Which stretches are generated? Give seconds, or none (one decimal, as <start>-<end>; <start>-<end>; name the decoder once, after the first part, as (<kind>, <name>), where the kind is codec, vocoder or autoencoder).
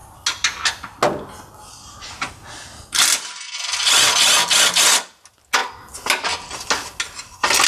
none